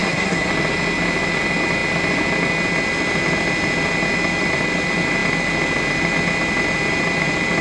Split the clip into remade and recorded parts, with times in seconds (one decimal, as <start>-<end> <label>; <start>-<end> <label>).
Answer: 0.0-0.5 remade; 0.5-7.6 recorded

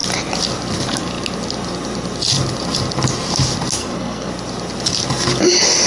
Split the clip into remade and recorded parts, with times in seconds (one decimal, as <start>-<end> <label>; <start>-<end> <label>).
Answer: 0.0-3.8 recorded; 3.8-4.3 remade; 4.3-5.9 recorded

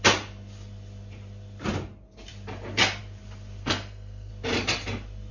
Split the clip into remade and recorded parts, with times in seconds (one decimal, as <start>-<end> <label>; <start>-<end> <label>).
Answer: 0.0-3.6 recorded; 3.6-4.3 remade; 4.3-5.3 recorded

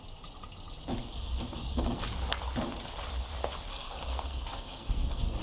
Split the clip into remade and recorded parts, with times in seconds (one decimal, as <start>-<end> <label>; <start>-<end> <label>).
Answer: 0.0-1.0 recorded; 1.0-2.0 remade; 2.0-3.7 recorded; 3.7-5.4 remade

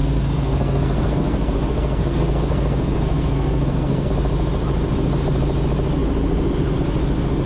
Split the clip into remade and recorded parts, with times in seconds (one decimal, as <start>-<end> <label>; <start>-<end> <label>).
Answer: 0.0-4.1 remade; 4.1-7.5 recorded

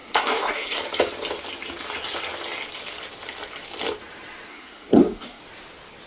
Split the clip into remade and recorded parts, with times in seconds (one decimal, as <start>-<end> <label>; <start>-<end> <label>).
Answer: 0.0-0.8 remade; 0.8-4.5 recorded; 4.5-5.4 remade; 5.4-6.1 recorded